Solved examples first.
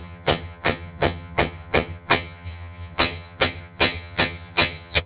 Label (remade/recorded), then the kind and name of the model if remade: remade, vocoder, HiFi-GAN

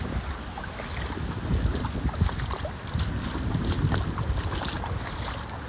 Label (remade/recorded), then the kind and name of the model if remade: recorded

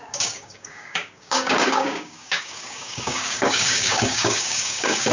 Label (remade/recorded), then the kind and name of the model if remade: remade, codec, DAC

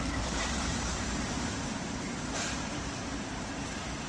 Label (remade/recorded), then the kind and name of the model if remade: remade, vocoder, BigVGAN v2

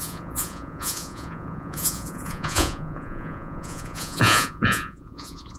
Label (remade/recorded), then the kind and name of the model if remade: remade, vocoder, Vocos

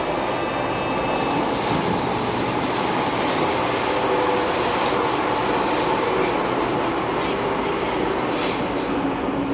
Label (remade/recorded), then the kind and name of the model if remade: recorded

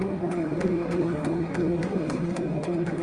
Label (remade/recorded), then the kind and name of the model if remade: remade, codec, SNAC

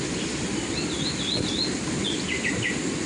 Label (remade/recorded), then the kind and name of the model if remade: recorded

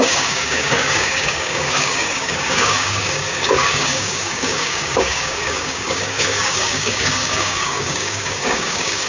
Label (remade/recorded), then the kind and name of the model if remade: remade, codec, DAC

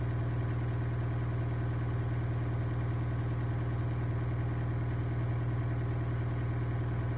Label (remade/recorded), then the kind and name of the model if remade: recorded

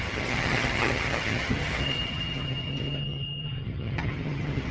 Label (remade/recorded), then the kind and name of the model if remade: remade, vocoder, HiFi-GAN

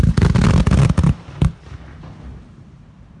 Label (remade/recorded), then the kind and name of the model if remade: recorded